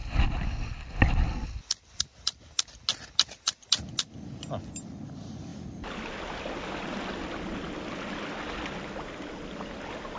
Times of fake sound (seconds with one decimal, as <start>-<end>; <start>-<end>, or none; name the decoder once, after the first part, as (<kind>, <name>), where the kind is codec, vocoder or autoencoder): none

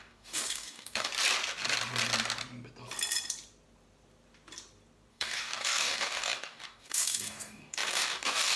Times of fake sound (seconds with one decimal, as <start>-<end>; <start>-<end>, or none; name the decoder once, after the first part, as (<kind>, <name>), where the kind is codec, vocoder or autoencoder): 0.0-1.1 (codec, DAC); 5.1-8.6

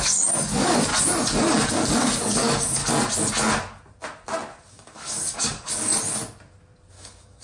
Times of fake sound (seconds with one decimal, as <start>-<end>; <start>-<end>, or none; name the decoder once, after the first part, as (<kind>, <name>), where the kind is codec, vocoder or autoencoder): 0.0-0.9 (codec, DAC); 1.7-2.8; 4.7-5.9; 6.9-7.4

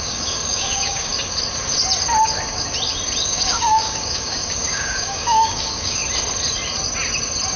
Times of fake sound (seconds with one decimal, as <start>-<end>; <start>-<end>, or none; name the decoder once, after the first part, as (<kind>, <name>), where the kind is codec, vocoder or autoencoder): 0.0-1.1 (codec, DAC); 3.2-6.0

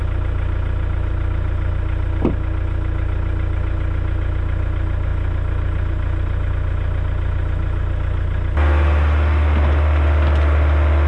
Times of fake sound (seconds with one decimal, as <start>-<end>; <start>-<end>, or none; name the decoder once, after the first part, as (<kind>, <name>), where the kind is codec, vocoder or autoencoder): none

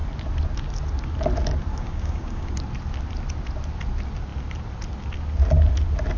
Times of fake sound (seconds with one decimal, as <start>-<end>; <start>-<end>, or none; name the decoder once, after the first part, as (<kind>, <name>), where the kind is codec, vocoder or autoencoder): 1.7-2.5 (codec, DAC)